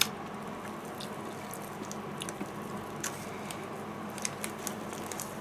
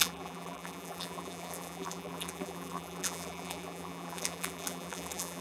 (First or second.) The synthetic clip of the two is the second